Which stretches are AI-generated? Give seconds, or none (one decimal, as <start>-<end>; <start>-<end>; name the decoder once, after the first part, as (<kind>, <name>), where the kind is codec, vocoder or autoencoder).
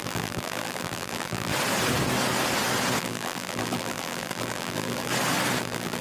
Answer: 0.0-1.5 (vocoder, BigVGAN v2); 3.0-5.1; 5.6-6.0